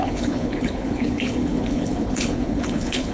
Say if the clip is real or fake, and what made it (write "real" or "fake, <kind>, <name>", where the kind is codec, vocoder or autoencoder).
fake, codec, HILCodec